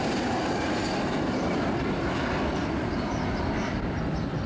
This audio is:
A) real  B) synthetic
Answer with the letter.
B